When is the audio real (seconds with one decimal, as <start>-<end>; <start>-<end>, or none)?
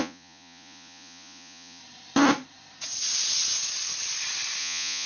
1.8-4.6